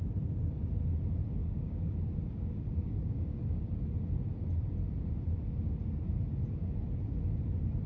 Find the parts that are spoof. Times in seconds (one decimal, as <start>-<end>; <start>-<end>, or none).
1.4-3.7